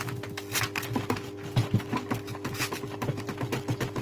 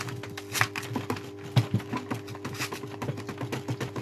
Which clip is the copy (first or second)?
first